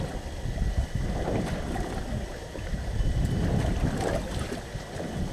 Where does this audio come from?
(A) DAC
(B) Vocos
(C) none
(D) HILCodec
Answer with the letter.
C